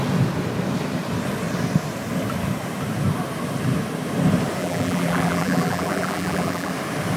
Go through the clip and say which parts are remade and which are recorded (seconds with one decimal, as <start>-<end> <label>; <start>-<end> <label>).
0.0-4.6 recorded; 4.6-6.7 remade; 6.7-7.2 recorded